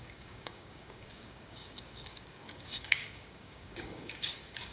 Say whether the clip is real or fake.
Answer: fake